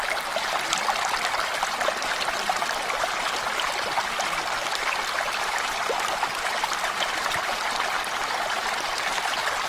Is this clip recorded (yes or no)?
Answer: yes